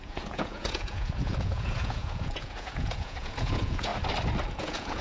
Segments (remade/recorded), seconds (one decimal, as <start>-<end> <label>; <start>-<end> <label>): 0.0-3.9 remade; 3.9-4.5 recorded; 4.5-5.0 remade

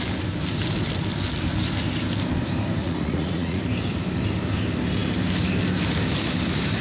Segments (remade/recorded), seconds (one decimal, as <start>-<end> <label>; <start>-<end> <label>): 0.0-2.8 recorded; 2.8-3.6 remade; 3.6-6.8 recorded

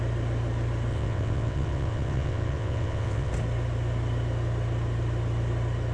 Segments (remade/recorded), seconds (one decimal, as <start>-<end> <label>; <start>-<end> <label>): 0.0-0.9 recorded; 0.9-3.3 remade; 3.3-5.9 recorded

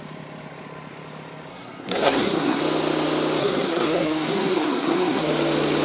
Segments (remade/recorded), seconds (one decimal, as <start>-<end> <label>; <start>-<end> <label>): 0.0-1.5 recorded; 1.5-2.6 remade; 2.6-3.4 recorded; 3.4-5.3 remade; 5.3-5.8 recorded

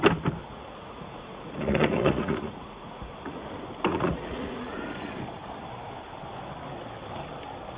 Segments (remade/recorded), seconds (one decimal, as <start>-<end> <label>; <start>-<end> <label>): 0.0-0.4 recorded; 0.4-3.5 remade; 3.5-3.9 recorded; 3.9-4.7 remade; 4.7-7.8 recorded

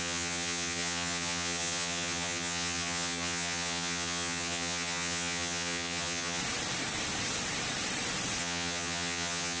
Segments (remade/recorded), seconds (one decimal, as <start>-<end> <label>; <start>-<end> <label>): 0.0-6.4 remade; 6.4-8.4 recorded; 8.4-9.6 remade